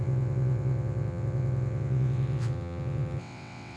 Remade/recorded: remade